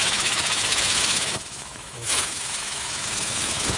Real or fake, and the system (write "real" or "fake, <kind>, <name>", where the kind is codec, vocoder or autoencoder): fake, autoencoder, DAC-VAE